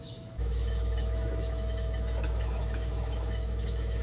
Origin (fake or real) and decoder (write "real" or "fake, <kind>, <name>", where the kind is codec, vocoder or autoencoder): fake, autoencoder, DAC-VAE